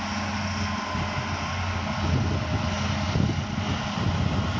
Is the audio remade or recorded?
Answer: recorded